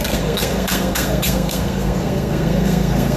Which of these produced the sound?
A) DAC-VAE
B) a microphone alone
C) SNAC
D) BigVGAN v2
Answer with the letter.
C